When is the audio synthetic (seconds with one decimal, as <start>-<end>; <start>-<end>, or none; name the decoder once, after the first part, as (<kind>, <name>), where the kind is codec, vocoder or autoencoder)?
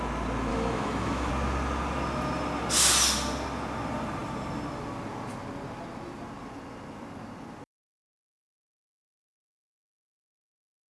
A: 0.5-1.3 (autoencoder, DAC-VAE)